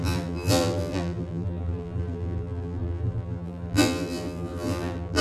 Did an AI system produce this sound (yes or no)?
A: yes